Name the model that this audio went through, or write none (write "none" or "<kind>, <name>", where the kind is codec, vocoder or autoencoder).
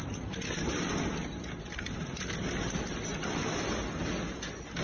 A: none